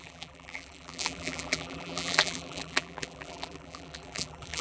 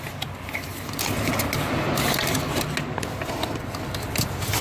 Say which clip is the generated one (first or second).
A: first